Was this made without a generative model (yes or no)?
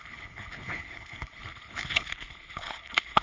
no